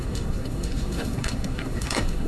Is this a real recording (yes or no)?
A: no